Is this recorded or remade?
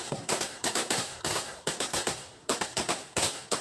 remade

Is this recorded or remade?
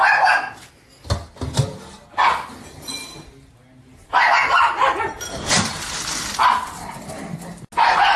recorded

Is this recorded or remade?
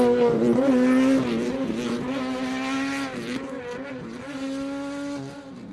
recorded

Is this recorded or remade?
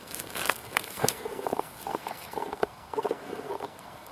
remade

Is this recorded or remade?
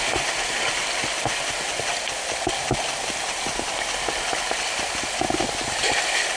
recorded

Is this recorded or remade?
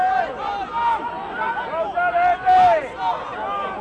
recorded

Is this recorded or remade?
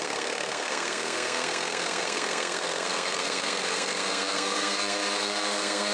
remade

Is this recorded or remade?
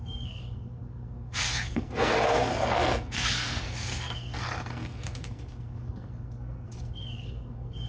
remade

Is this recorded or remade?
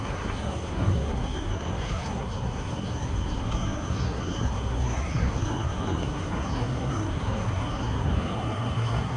remade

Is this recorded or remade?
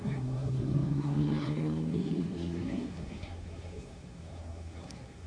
remade